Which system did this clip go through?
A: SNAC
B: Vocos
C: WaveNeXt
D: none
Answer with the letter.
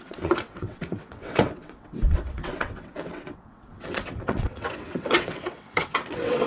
C